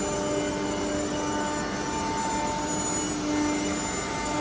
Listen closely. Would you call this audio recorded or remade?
recorded